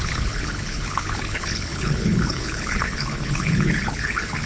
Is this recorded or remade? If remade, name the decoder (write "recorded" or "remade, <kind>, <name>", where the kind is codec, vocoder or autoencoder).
remade, codec, HILCodec